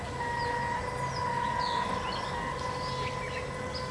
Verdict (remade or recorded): recorded